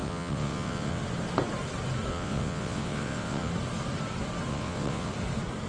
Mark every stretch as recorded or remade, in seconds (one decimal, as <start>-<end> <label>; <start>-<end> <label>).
0.0-1.0 remade; 1.0-2.1 recorded; 2.1-3.5 remade; 3.5-4.5 recorded; 4.5-5.1 remade; 5.1-5.7 recorded